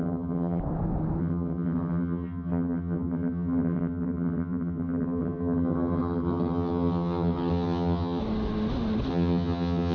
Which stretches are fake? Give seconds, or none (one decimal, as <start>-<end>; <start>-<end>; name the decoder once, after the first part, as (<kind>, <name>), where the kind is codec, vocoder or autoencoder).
0.0-0.6 (vocoder, HiFi-GAN); 1.2-8.2; 9.1-9.9

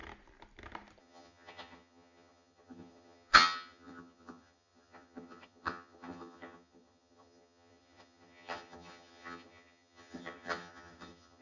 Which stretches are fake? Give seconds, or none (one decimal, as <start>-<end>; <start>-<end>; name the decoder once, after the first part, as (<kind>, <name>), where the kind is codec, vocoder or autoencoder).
1.0-11.4 (vocoder, HiFi-GAN)